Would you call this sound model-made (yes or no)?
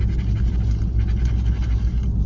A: no